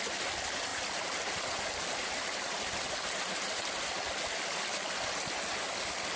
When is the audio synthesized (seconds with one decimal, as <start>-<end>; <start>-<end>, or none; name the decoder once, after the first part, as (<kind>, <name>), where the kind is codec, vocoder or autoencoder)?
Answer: none